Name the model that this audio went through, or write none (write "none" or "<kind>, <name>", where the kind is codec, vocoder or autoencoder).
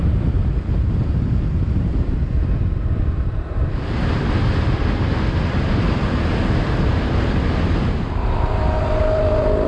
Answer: vocoder, BigVGAN v2